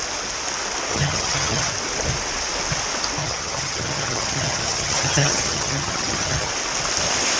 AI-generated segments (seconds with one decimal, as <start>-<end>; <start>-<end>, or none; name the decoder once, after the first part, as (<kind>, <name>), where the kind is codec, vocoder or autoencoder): 0.9-1.7 (vocoder, HiFi-GAN); 3.2-6.5